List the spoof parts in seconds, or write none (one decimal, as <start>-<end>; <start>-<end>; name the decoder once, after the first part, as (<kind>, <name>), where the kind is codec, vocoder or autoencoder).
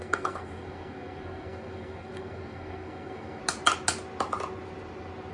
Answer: 0.0-3.4 (codec, SNAC)